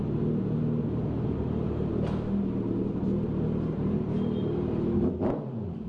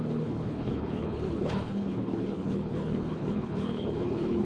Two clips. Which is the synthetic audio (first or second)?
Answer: second